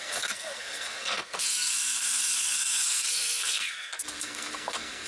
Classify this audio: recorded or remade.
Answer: remade